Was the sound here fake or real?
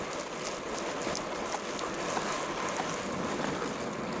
real